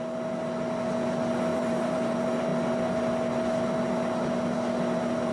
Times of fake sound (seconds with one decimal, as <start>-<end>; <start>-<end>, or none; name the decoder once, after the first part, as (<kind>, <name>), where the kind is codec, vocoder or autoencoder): 1.5-2.1 (vocoder, BigVGAN v2)